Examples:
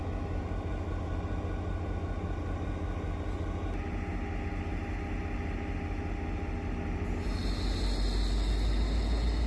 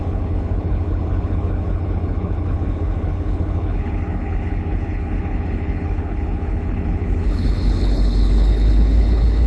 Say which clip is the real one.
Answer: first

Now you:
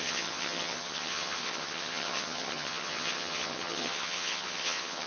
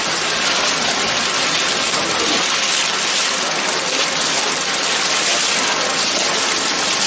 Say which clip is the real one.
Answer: second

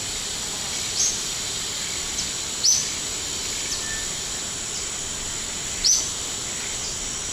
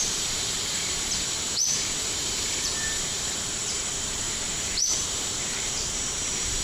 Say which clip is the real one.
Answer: first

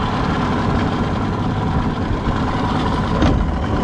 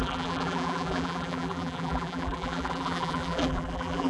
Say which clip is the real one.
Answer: first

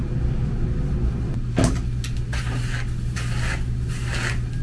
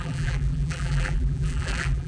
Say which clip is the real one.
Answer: first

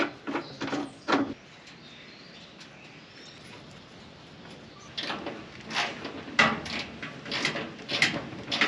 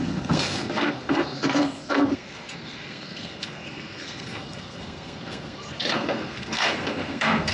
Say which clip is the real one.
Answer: first